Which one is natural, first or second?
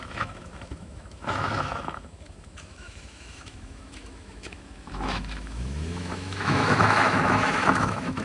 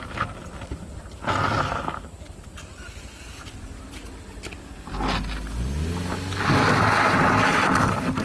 second